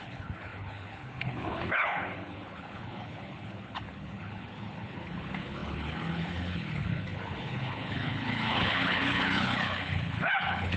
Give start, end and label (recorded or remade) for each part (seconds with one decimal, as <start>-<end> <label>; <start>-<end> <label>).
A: 0.0-10.8 remade